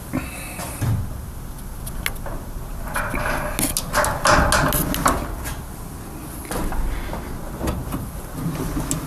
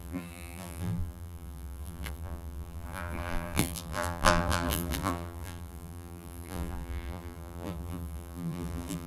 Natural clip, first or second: first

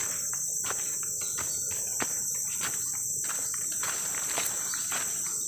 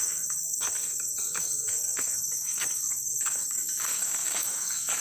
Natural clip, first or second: first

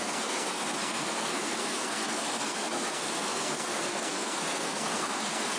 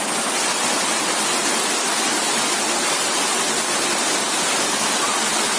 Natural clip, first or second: second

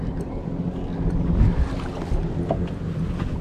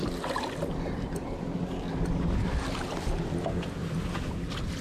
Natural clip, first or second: first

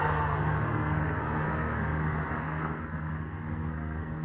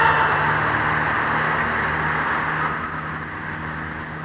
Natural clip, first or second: second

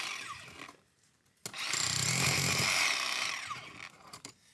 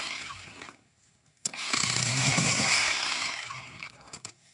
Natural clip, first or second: first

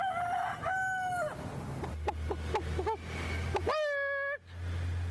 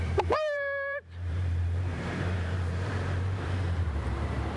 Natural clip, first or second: first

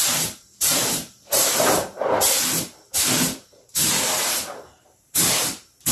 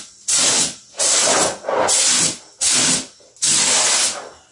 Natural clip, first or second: second